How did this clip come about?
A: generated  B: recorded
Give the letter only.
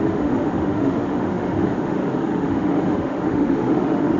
A